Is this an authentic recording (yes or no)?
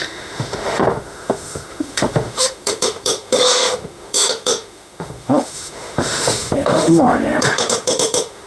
no